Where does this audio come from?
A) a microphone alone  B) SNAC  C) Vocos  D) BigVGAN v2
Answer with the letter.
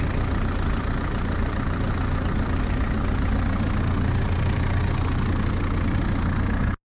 A